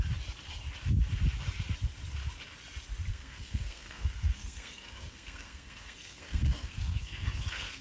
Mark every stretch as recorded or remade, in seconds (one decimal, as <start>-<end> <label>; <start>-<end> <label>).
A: 0.0-3.1 recorded; 3.1-7.8 remade